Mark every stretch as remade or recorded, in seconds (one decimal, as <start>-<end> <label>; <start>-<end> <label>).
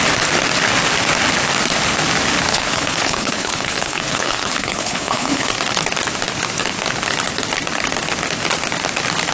0.0-2.5 recorded; 2.5-5.5 remade; 5.5-9.3 recorded